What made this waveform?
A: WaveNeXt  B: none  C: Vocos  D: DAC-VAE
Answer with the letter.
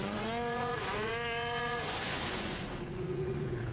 C